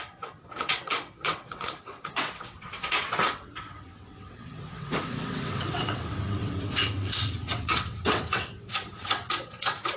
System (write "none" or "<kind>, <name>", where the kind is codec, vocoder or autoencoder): vocoder, WaveNeXt